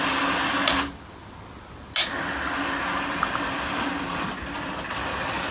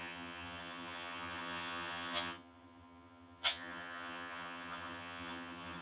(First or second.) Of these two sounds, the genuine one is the first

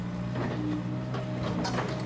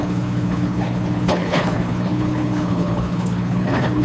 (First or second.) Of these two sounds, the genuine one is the first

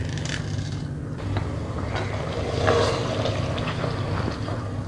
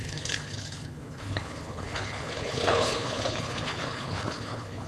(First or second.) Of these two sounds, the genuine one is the first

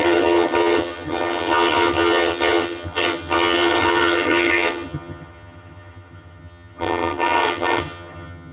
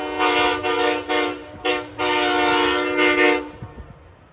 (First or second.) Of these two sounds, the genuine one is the second